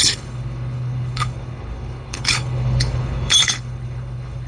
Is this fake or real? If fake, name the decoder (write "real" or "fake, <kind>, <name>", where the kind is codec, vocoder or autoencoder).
fake, codec, HILCodec